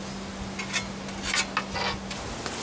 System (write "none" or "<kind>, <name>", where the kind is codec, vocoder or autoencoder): none